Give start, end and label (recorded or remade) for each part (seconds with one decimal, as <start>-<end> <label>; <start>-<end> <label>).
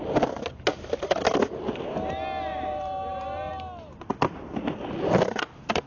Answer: 0.0-0.7 recorded; 0.7-1.4 remade; 1.4-2.5 recorded; 2.5-3.5 remade; 3.5-5.9 recorded